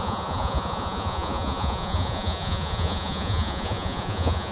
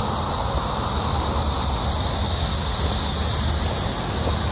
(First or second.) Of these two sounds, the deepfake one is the first